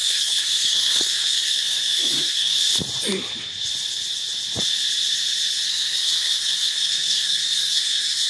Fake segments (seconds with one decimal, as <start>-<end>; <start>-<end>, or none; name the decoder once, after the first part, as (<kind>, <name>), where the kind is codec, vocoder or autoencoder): 0.0-2.6 (codec, SNAC); 5.7-8.3